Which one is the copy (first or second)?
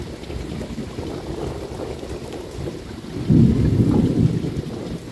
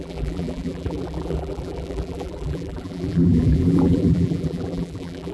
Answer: second